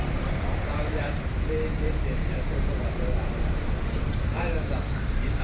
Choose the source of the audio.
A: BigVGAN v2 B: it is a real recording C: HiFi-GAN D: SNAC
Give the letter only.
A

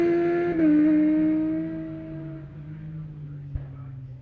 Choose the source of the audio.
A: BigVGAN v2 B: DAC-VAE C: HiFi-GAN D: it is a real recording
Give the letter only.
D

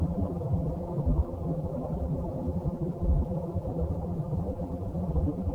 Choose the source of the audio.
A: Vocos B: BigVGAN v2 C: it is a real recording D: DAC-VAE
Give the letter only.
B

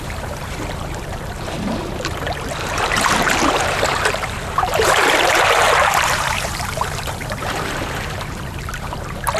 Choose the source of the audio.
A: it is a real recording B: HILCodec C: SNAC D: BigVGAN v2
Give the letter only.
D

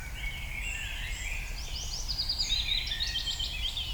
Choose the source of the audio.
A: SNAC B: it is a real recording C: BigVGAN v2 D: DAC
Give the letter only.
B